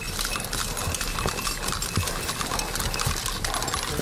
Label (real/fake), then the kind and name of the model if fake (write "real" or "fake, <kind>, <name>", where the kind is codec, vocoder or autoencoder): real